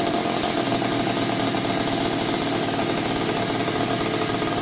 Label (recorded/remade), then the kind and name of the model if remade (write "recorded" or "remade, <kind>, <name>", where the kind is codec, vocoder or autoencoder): remade, vocoder, BigVGAN v2